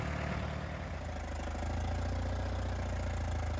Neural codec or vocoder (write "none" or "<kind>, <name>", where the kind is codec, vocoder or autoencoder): none